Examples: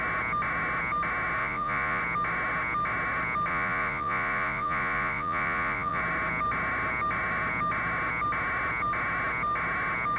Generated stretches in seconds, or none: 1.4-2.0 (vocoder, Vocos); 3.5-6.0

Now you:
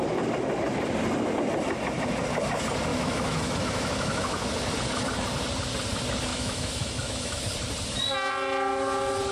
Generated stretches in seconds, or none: 2.9-4.5 (autoencoder, DAC-VAE); 6.3-7.4

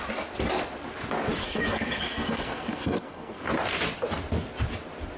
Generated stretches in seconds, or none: 1.4-3.5 (codec, SNAC)

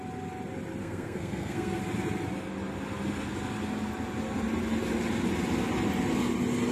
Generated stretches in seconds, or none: 0.8-1.8 (codec, SNAC)

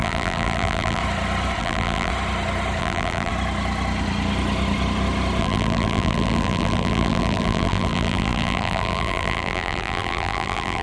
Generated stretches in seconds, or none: 0.0-1.0 (vocoder, BigVGAN v2); 1.6-2.1; 2.8-3.3; 5.4-10.8

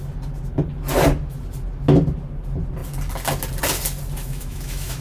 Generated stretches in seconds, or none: 4.2-5.0 (autoencoder, DAC-VAE)